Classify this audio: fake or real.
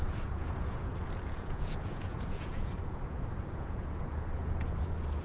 fake